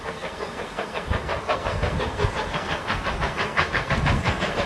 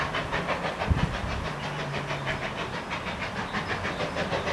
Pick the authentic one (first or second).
second